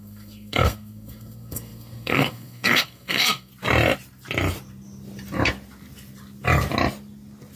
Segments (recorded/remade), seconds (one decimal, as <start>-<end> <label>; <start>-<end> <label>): 0.0-3.5 remade; 3.5-7.6 recorded